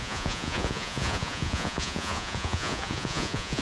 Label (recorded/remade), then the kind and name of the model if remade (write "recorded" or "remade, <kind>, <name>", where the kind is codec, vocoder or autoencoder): remade, vocoder, Vocos